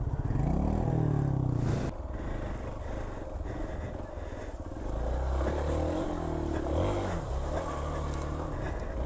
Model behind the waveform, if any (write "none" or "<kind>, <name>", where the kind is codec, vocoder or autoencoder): none